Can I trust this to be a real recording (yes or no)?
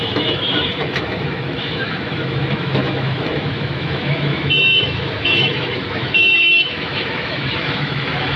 no